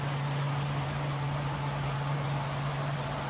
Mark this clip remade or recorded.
recorded